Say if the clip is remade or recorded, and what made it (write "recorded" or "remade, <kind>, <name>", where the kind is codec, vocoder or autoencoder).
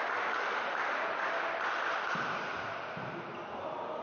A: recorded